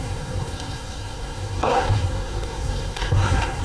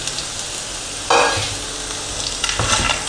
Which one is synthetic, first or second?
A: first